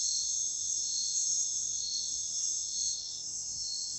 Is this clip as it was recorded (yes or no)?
no